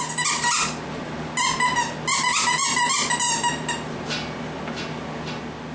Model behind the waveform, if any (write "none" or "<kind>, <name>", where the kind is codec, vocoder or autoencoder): none